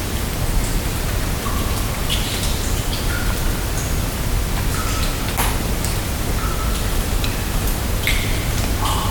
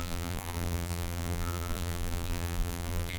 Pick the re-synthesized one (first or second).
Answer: second